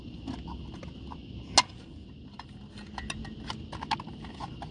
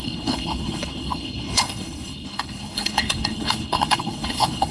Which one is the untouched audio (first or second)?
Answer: first